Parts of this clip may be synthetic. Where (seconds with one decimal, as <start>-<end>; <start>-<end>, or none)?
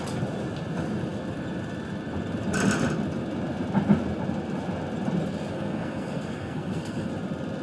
5.5-7.1